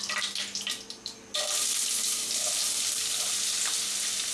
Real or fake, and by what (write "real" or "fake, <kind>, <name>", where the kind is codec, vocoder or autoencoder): real